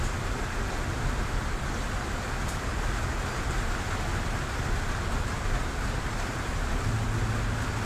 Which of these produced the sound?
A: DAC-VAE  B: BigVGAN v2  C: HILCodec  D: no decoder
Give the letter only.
D